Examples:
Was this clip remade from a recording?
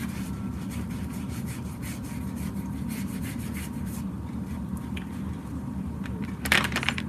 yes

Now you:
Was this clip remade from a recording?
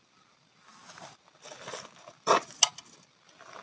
no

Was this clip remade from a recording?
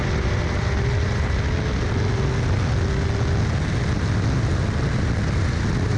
no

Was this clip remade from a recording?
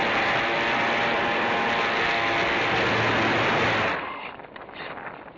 no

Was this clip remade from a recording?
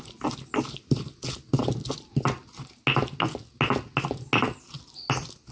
no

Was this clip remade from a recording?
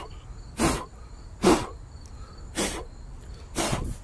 no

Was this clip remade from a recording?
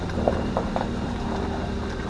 yes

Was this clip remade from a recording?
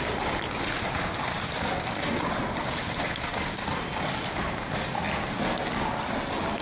no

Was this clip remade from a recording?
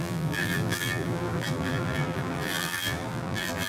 yes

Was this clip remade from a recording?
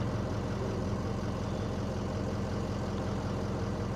no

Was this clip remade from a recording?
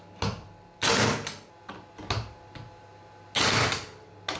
no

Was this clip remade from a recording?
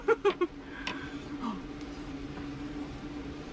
yes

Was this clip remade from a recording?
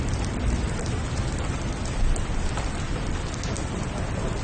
no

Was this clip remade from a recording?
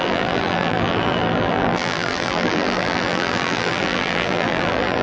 yes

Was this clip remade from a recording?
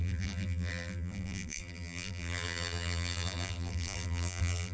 yes